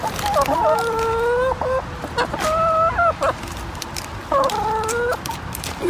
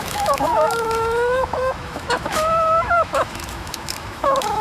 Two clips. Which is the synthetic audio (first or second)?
second